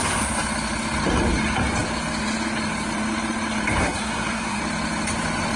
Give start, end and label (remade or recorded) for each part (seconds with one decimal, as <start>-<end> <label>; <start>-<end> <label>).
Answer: 0.0-3.8 recorded; 3.8-4.6 remade; 4.6-5.6 recorded